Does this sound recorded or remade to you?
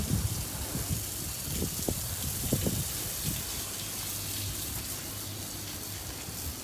recorded